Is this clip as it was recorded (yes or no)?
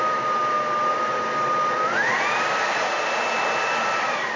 no